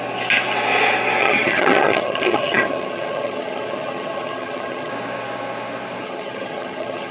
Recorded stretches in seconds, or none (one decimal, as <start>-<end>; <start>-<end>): 0.0-1.2; 4.9-6.0